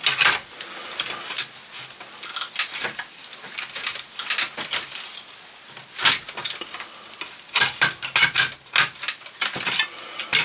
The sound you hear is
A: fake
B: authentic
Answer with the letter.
B